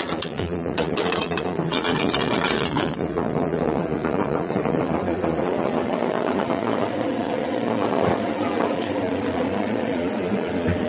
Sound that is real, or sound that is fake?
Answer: fake